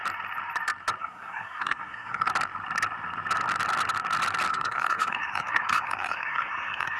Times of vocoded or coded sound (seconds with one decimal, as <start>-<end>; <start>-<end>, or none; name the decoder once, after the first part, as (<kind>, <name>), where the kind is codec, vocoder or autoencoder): 1.0-2.3 (codec, SNAC); 4.5-7.0